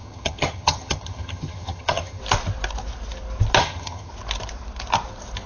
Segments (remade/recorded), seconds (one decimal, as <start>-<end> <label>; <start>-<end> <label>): 0.0-2.2 remade; 2.2-3.6 recorded; 3.6-4.1 remade; 4.1-5.5 recorded